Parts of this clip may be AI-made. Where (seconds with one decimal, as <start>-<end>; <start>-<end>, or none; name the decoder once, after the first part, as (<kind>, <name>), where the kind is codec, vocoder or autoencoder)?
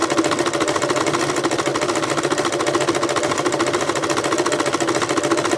none